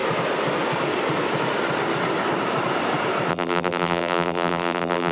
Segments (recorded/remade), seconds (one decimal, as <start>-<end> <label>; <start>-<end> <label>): 0.0-3.3 recorded; 3.3-5.1 remade